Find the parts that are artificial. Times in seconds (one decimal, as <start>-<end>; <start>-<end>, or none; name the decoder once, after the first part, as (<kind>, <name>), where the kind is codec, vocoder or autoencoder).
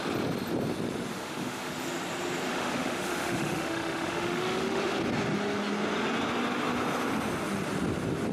1.1-1.7 (autoencoder, DAC-VAE); 2.5-4.8